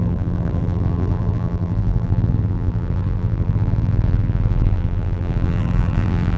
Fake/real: fake